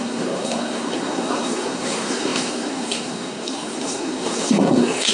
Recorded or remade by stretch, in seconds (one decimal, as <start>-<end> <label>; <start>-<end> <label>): 0.0-5.1 remade